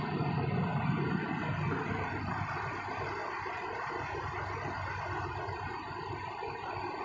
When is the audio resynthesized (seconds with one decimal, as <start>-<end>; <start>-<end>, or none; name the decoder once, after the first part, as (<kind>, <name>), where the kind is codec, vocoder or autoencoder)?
none